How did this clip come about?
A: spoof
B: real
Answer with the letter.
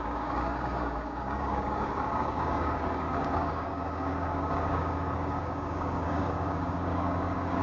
A